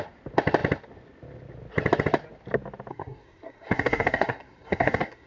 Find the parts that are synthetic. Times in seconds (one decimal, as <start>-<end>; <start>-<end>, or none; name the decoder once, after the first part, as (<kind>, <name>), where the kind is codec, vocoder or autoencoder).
2.9-5.3 (codec, SNAC)